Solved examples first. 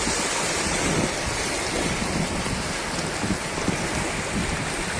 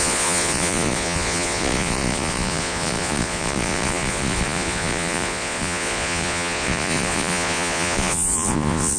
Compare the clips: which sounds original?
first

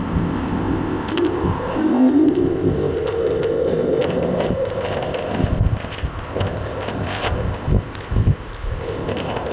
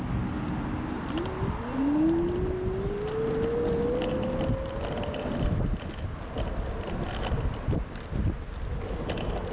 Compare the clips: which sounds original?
second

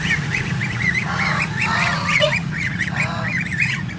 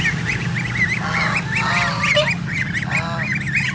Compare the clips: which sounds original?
second